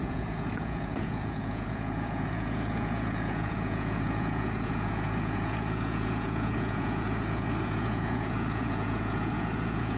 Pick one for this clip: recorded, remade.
remade